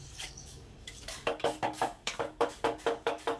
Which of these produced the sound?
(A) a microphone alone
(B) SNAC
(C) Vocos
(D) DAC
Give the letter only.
D